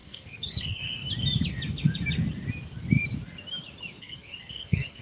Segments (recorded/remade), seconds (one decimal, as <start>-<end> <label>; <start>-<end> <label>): 0.0-1.0 remade; 1.0-4.0 recorded; 4.0-5.0 remade